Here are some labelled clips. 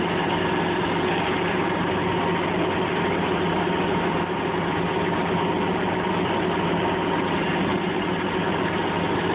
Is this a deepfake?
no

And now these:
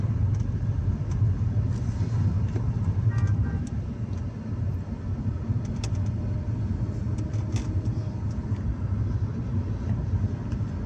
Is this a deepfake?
no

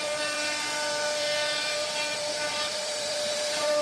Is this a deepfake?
yes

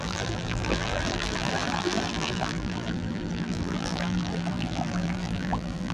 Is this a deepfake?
yes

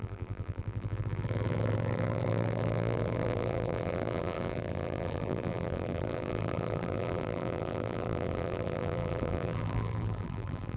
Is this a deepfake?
yes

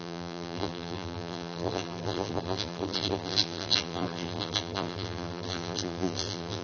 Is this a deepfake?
yes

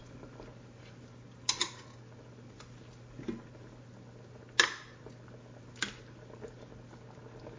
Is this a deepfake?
no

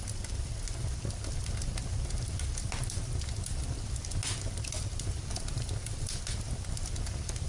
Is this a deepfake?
no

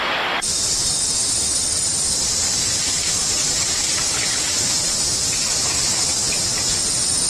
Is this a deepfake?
yes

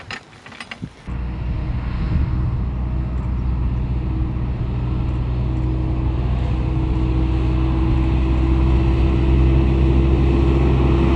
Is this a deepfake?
no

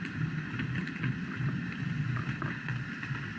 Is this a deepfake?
yes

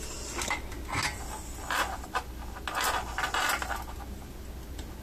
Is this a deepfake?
no